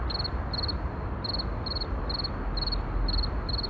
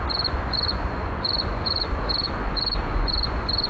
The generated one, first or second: second